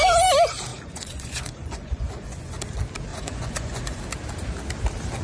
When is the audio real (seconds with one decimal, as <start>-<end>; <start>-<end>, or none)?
0.0-0.7; 2.6-3.1; 4.0-5.2